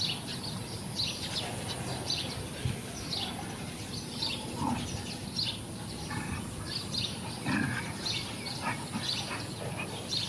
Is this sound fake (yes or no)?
no